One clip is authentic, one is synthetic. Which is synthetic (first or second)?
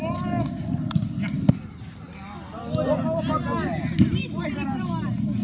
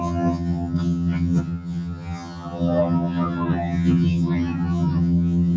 second